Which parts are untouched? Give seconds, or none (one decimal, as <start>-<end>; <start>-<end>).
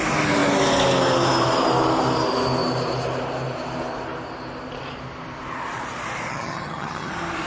0.0-6.3; 7.1-7.5